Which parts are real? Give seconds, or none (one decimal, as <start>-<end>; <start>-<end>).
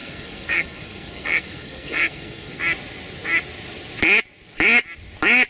2.6-5.5